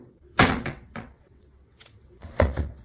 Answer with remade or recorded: remade